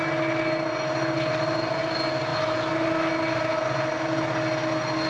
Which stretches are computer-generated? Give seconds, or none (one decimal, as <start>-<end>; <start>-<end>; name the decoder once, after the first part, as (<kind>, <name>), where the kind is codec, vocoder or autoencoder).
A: none